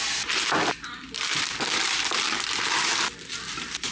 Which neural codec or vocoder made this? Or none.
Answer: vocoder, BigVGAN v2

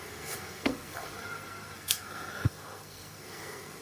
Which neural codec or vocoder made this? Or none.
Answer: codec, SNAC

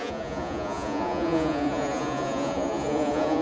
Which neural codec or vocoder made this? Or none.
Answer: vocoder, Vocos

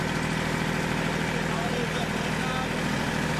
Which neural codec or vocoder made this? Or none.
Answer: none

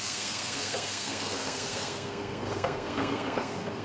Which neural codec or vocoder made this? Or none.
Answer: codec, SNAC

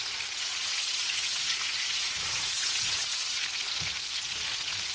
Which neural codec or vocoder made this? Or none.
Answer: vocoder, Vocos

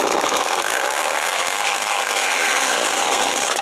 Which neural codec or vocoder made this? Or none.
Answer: codec, SNAC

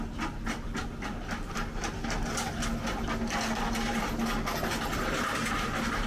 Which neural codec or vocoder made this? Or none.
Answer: none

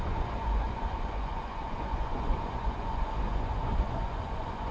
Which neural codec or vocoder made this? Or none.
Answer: vocoder, Vocos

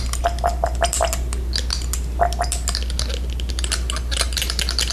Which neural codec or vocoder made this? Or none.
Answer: none